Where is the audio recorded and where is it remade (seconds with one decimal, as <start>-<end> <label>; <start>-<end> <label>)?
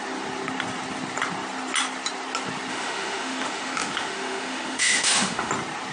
0.0-2.7 recorded; 2.7-5.5 remade; 5.5-5.9 recorded